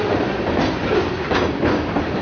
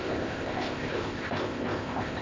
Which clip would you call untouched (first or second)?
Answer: first